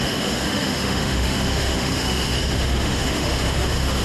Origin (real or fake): fake